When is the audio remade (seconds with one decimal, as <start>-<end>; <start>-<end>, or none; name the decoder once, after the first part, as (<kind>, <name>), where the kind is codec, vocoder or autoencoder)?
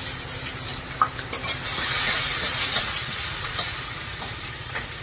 1.7-5.0 (vocoder, Vocos)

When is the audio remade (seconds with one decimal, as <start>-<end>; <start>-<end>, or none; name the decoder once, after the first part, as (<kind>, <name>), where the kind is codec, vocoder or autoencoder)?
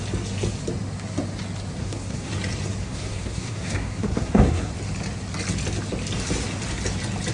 1.8-2.3 (codec, SNAC); 2.8-4.7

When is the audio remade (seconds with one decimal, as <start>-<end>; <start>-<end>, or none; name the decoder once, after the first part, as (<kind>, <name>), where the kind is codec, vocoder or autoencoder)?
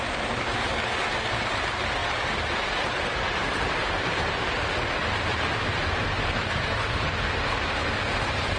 0.0-0.5 (vocoder, BigVGAN v2); 1.3-2.0; 5.0-8.6